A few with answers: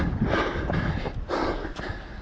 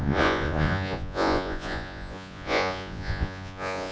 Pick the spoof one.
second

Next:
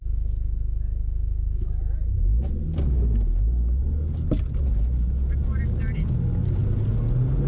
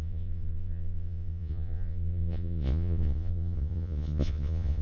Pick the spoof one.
second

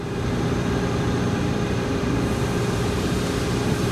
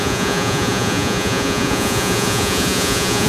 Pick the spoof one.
second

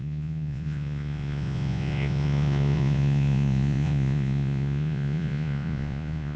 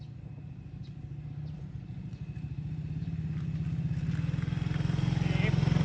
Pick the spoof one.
first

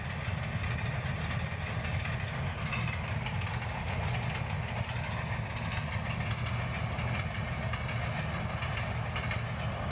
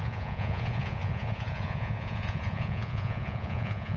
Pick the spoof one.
second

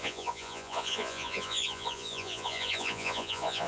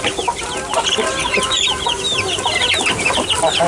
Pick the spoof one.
first